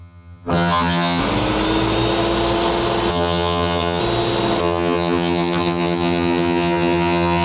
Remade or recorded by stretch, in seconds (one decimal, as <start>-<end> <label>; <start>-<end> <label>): 0.0-1.2 remade; 1.2-3.1 recorded; 3.1-4.0 remade; 4.0-4.6 recorded; 4.6-7.4 remade